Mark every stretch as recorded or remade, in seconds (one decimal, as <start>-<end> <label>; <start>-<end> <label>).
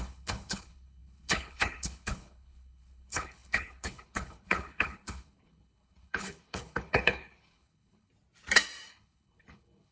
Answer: 0.0-8.1 remade; 8.1-8.9 recorded; 8.9-9.9 remade